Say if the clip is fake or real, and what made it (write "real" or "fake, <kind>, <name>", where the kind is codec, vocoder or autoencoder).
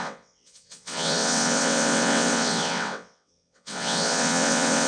fake, vocoder, WaveNeXt